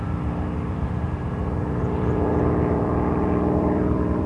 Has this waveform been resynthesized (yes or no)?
yes